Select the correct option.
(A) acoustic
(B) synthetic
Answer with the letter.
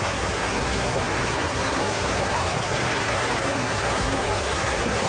B